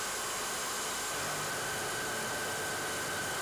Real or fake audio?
real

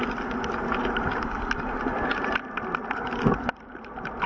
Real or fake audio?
real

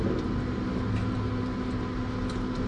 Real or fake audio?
real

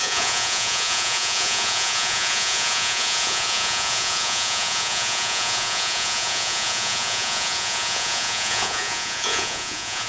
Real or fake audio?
fake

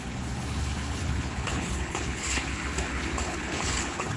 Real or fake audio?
fake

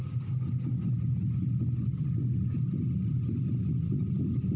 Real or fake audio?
real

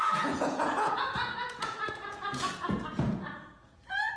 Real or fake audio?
fake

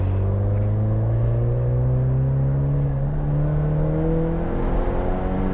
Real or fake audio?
real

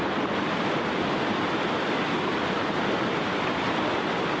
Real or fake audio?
real